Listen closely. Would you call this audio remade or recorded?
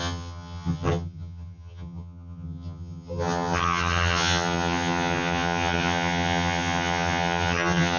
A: remade